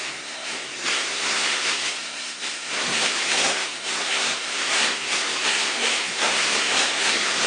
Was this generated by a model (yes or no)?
yes